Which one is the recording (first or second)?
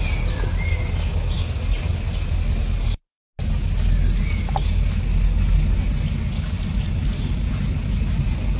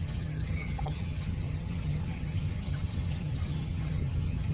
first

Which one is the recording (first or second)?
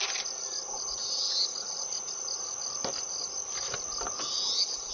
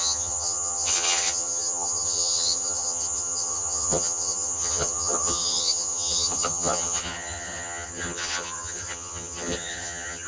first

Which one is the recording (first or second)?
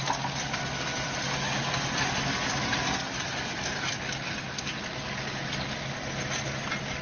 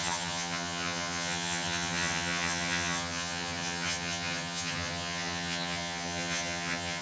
first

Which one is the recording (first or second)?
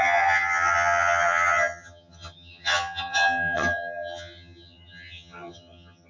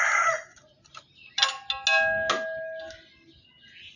second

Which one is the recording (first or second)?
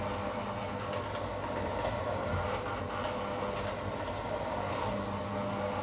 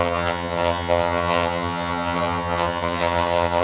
first